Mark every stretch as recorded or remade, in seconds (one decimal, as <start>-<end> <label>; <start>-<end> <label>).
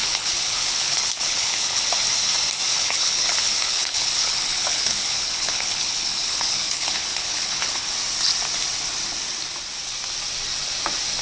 0.0-1.8 remade; 1.8-2.7 recorded; 2.7-7.9 remade; 7.9-11.2 recorded